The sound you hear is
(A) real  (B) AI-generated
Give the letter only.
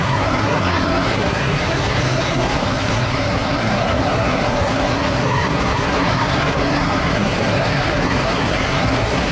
B